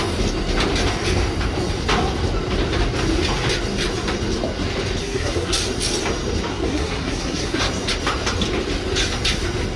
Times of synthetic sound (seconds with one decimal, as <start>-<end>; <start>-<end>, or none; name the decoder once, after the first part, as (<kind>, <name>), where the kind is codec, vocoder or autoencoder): 5.0-5.6 (codec, SNAC); 6.5-7.6